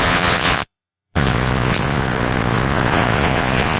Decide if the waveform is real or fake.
fake